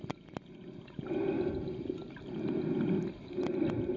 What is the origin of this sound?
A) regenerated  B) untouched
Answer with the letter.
B